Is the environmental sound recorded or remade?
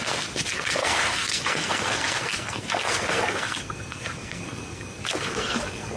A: remade